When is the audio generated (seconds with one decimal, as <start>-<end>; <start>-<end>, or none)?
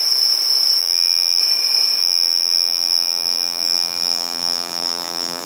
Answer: 0.8-1.4; 2.0-5.5